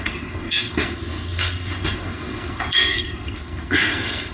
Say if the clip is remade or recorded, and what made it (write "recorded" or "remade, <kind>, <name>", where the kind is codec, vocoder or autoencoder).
remade, codec, SNAC